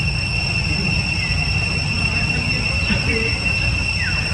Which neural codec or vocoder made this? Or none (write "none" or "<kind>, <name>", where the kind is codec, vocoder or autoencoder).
none